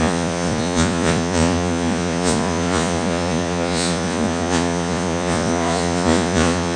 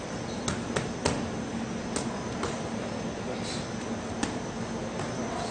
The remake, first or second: first